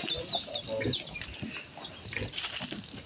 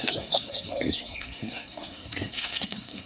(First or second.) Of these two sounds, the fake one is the second